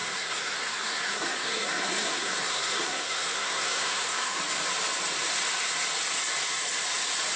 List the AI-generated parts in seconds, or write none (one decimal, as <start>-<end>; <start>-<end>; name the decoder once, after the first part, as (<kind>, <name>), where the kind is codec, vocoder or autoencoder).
0.0-4.4 (codec, SNAC)